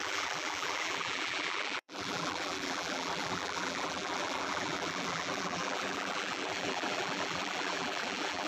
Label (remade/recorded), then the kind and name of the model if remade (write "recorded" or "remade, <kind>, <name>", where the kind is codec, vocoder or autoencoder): remade, vocoder, BigVGAN v2